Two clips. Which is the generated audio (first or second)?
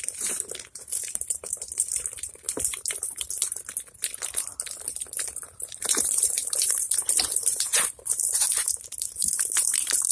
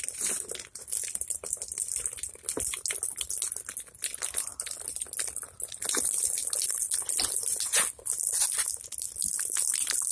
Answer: first